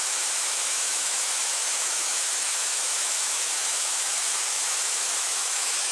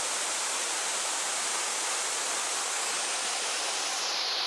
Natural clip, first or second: second